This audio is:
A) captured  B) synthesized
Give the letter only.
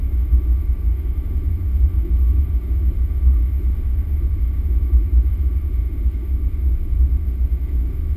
B